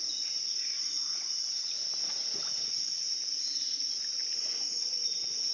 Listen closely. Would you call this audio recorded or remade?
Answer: recorded